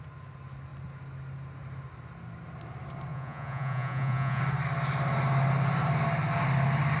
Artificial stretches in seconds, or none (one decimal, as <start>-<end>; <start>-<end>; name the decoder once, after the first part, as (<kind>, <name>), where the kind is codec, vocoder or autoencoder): 3.1-4.4 (vocoder, Vocos)